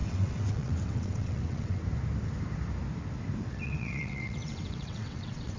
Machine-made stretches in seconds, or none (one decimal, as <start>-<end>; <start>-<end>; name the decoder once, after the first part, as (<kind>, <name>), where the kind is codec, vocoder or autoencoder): 0.0-1.8 (vocoder, WaveNeXt); 3.5-5.6